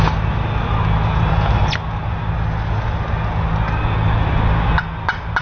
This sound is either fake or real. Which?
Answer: real